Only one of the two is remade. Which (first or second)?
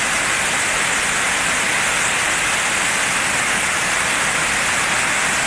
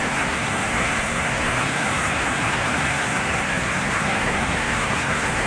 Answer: second